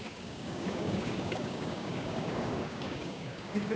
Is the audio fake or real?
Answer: fake